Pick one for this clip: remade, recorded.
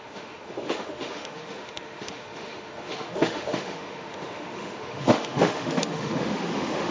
remade